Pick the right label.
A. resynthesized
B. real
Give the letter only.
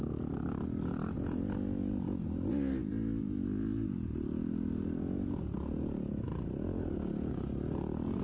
B